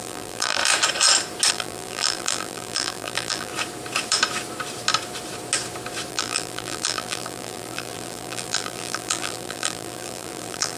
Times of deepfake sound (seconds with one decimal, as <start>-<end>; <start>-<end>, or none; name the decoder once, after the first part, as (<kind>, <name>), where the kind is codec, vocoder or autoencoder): 0.0-0.6 (vocoder, BigVGAN v2); 1.5-3.5; 6.1-10.8